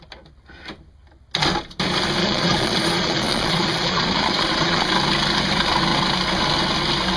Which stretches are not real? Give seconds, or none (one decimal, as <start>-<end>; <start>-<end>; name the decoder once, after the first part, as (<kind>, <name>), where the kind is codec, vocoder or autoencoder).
2.2-4.9 (vocoder, Vocos)